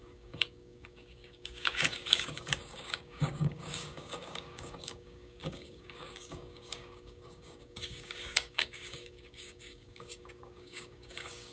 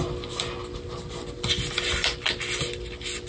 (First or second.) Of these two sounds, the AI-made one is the first